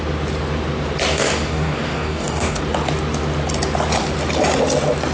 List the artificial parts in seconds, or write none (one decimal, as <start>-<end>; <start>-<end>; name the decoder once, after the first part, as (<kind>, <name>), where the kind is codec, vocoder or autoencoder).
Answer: 1.1-2.6 (codec, DAC)